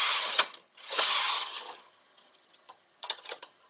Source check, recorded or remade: remade